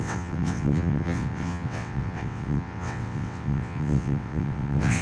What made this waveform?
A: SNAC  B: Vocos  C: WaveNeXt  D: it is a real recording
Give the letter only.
C